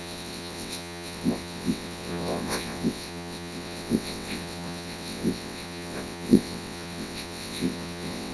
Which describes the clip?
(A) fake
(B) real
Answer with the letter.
A